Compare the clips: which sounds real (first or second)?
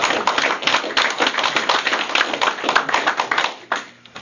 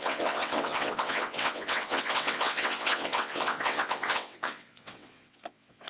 first